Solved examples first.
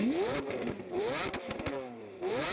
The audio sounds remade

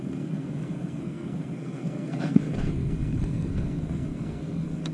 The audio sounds remade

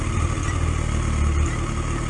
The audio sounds recorded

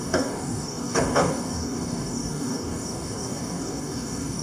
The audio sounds remade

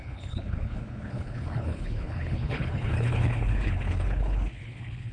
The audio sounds remade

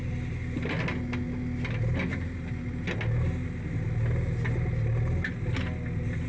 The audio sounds recorded